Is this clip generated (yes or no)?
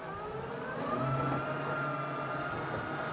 no